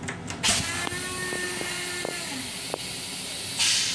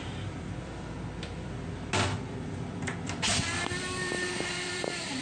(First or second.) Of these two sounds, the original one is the first